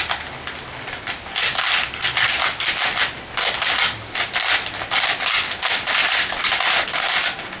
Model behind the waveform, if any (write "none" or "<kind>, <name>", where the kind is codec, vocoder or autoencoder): none